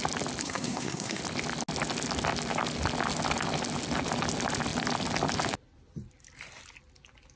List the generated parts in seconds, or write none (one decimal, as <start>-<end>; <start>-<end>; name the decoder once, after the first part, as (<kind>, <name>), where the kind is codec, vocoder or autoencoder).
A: 0.4-1.2 (codec, SNAC)